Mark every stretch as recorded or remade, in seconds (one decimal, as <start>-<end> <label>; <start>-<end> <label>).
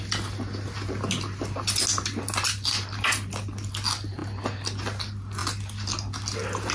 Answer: 0.0-6.7 recorded